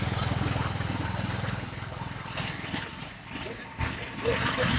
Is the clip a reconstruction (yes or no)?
no